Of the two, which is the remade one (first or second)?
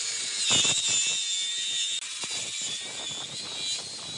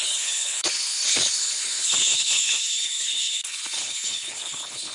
second